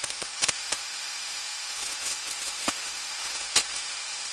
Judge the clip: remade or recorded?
remade